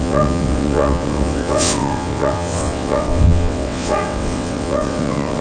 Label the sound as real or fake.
fake